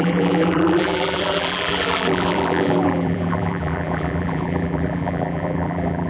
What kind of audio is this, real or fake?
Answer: fake